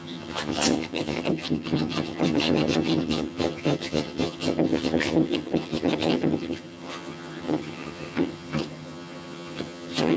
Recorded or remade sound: remade